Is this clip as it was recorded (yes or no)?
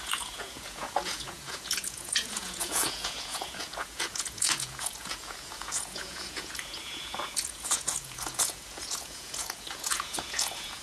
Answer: no